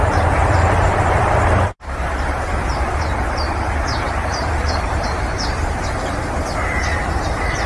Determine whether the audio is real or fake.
fake